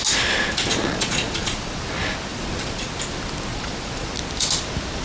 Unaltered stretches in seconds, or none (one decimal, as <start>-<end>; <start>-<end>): 0.0-0.7; 1.9-2.3; 2.9-3.5; 4.1-5.0